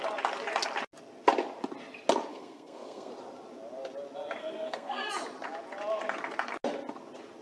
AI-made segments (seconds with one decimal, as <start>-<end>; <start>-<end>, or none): 2.3-3.1; 4.4-5.1